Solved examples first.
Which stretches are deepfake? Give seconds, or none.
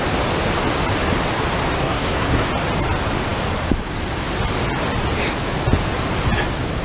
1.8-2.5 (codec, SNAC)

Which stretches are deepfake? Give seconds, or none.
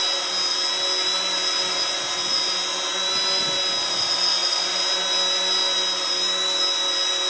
none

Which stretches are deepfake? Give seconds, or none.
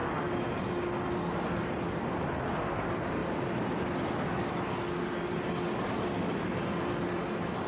none